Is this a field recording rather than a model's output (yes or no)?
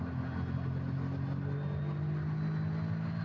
yes